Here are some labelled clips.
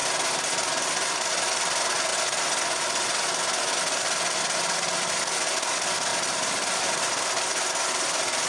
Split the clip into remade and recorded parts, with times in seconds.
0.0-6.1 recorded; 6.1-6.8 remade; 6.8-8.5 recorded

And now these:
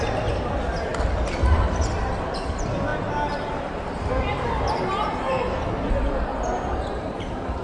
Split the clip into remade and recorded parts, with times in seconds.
0.0-7.6 recorded

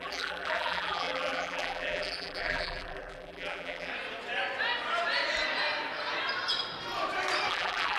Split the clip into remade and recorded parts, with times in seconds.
0.0-3.9 remade; 3.9-7.5 recorded; 7.5-8.0 remade

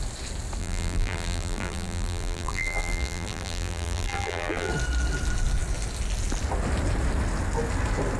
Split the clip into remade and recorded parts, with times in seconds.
0.0-0.6 recorded; 0.6-4.7 remade; 4.7-8.2 recorded

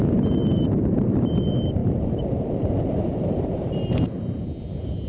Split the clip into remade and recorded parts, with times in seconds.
0.0-5.1 remade